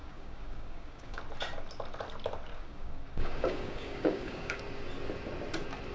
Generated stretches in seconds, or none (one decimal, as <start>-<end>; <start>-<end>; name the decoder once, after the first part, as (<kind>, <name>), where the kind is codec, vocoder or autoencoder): 0.0-1.2 (codec, DAC); 2.5-4.6